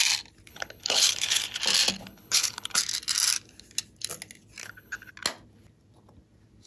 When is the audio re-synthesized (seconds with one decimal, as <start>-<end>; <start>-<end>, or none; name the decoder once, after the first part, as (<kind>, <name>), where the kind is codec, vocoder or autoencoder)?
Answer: 0.5-1.6 (codec, HILCodec); 2.0-2.8; 4.6-5.1